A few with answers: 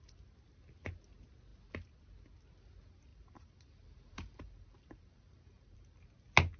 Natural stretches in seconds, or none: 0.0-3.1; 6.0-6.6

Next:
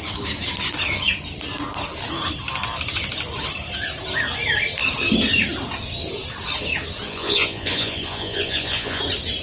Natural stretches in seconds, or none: 0.0-7.1; 9.0-9.4

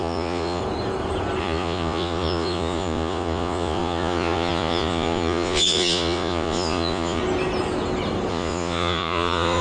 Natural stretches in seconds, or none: 0.6-1.4; 7.2-8.3